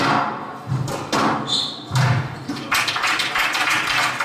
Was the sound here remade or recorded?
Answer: recorded